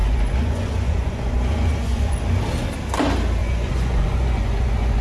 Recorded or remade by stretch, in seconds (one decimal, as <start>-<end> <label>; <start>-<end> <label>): 0.0-2.2 remade; 2.2-3.4 recorded; 3.4-5.0 remade